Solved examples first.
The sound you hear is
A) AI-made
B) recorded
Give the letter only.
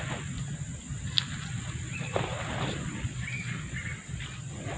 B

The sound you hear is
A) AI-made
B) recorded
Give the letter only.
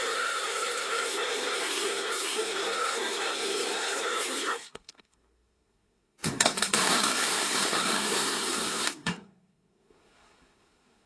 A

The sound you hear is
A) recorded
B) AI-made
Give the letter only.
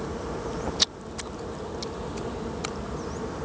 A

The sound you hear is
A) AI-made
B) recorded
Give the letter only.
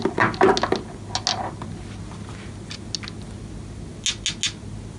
B